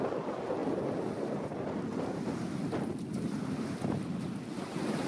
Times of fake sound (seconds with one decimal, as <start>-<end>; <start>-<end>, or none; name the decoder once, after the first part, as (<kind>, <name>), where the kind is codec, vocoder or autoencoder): none